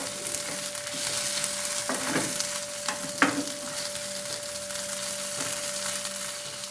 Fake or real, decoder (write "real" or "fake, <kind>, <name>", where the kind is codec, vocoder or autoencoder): real